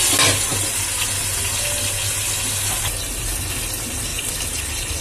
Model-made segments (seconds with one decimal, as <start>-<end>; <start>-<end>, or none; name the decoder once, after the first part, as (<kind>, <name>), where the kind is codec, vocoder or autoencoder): 4.1-5.0 (vocoder, BigVGAN v2)